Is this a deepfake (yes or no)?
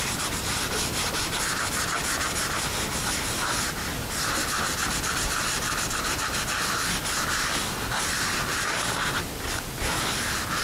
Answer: no